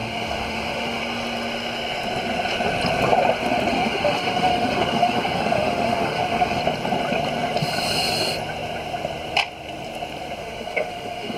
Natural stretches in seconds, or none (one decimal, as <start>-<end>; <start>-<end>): 1.0-3.7; 6.6-10.4